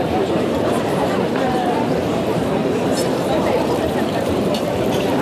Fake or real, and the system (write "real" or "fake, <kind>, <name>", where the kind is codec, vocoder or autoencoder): fake, vocoder, BigVGAN v2